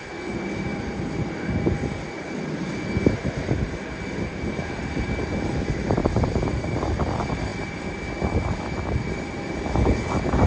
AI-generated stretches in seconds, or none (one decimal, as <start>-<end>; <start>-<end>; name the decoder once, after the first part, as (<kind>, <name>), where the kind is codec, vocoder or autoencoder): 6.0-6.8 (vocoder, BigVGAN v2)